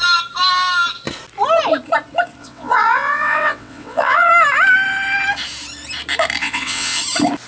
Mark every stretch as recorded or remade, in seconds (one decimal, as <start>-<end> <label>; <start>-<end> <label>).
0.0-2.4 recorded; 2.4-4.3 remade; 4.3-6.4 recorded; 6.4-7.0 remade; 7.0-7.5 recorded